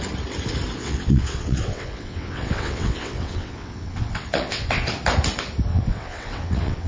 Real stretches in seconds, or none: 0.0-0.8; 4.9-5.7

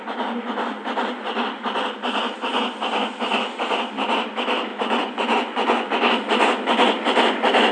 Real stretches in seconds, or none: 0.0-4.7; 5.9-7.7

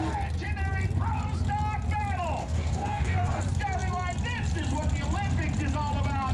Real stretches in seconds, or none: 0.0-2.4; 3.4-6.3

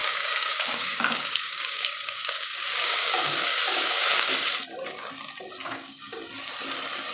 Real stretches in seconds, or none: 4.3-5.6; 6.2-7.1

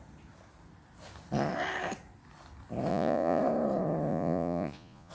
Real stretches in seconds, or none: 0.0-2.9; 3.4-4.1

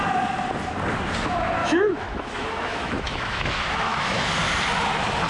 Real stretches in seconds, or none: 0.0-1.6; 4.3-5.3

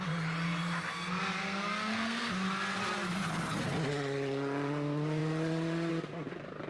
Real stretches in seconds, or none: 0.0-1.4; 2.3-6.7

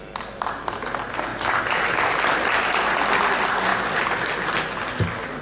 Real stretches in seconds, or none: 0.0-1.3; 2.8-5.4